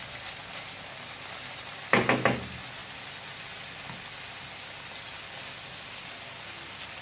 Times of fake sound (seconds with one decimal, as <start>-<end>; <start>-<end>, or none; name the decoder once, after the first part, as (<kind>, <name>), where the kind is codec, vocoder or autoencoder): none